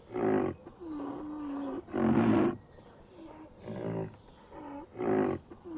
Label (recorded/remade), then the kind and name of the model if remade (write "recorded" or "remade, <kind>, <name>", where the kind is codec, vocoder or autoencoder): recorded